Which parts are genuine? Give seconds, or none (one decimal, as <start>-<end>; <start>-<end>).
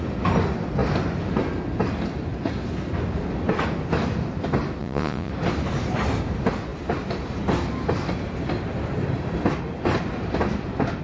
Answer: 0.0-4.8; 5.3-11.0